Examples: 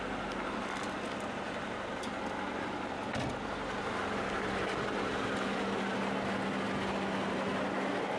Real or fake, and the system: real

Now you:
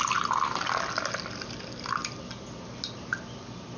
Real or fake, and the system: real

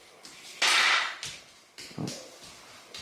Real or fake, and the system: real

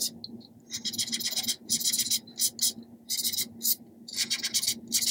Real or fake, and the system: real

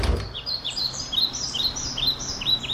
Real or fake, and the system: fake, vocoder, BigVGAN v2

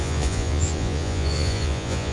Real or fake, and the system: fake, vocoder, Vocos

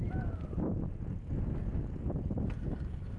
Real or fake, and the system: real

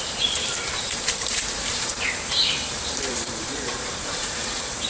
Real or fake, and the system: fake, vocoder, BigVGAN v2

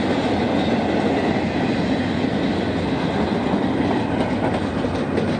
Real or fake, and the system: real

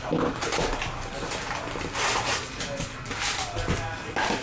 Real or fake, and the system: real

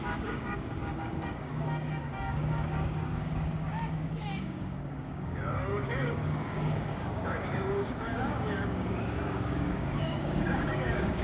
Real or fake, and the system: fake, codec, DAC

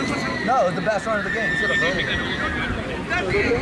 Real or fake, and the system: real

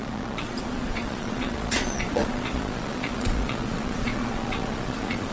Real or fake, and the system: fake, vocoder, Vocos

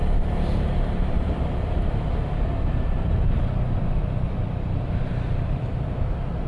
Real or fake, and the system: real